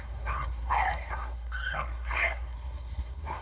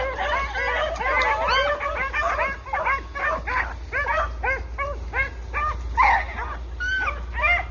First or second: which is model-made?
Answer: first